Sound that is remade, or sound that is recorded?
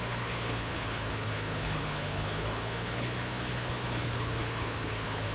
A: remade